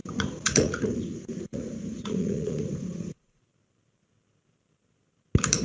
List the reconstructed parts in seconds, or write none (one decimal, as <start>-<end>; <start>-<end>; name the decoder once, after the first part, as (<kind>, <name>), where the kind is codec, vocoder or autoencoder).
0.0-3.4 (vocoder, Vocos)